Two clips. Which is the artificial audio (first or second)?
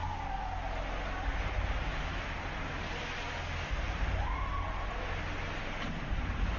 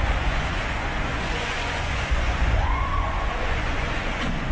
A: second